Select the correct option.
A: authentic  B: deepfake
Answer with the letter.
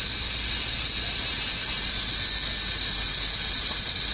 A